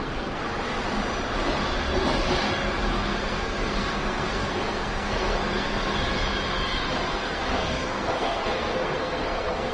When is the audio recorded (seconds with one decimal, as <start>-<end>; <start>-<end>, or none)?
0.4-2.9; 5.9-7.1